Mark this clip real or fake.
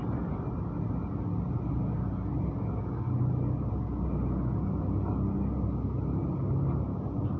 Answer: real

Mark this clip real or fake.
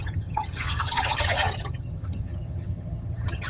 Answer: fake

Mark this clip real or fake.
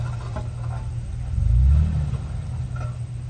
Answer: real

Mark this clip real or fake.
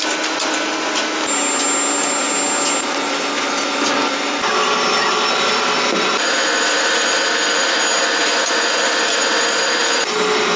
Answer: real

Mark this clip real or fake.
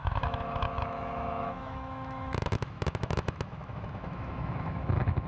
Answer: fake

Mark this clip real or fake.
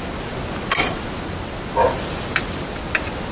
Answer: real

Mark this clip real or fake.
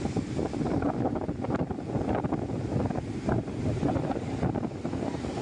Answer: real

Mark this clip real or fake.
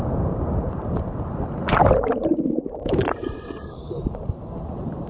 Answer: fake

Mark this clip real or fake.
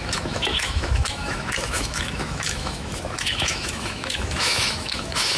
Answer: fake